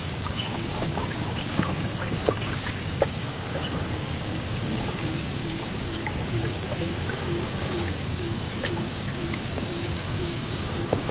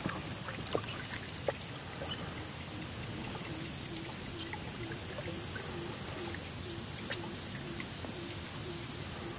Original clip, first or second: second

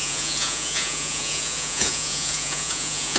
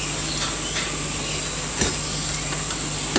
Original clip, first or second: second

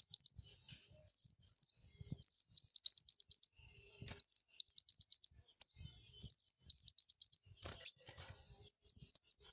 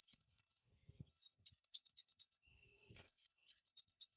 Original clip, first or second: first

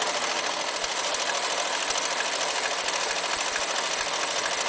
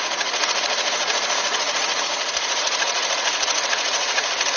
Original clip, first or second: first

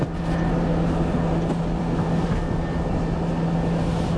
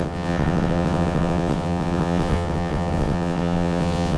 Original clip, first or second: first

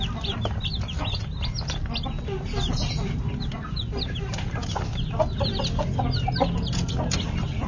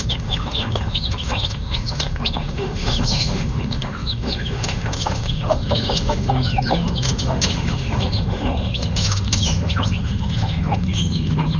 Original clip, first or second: first